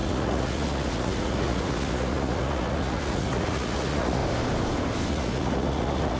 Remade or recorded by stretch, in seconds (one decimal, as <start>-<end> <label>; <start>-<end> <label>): 0.0-4.2 remade; 4.2-5.1 recorded; 5.1-6.2 remade